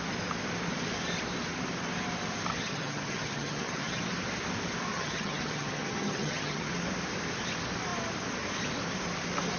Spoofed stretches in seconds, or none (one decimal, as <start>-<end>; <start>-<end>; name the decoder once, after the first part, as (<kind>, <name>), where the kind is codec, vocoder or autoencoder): 2.5-4.0 (vocoder, HiFi-GAN); 4.9-6.7